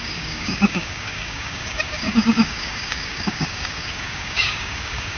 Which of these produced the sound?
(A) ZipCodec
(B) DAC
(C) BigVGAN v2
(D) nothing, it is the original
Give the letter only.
B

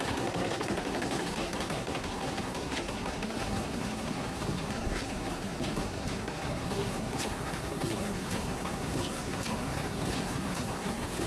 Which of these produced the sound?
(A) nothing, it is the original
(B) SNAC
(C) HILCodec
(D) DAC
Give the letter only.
B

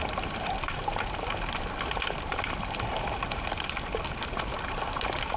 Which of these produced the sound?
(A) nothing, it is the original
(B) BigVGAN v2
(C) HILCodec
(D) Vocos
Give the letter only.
B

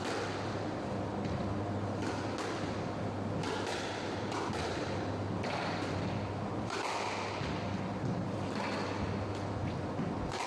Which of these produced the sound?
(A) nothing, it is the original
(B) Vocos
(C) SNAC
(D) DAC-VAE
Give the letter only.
A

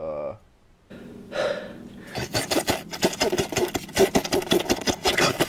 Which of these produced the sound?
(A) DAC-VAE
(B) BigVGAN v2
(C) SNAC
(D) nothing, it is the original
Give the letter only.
D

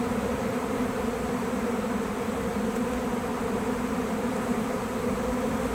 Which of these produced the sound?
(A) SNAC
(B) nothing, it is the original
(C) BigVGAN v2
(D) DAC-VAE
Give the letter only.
C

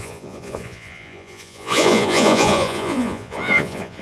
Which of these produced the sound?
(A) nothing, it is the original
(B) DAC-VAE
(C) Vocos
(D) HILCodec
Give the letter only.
C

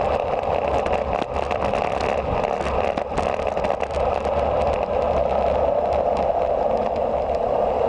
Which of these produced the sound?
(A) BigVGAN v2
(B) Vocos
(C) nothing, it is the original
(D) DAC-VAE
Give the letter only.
C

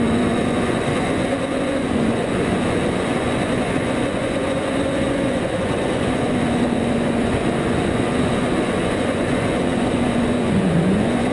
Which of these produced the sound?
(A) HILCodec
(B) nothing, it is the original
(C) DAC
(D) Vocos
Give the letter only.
D